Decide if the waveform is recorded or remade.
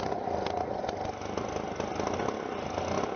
recorded